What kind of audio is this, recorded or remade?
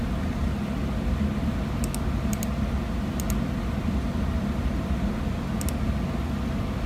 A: recorded